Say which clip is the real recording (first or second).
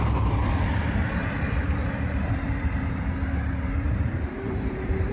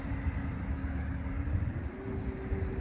second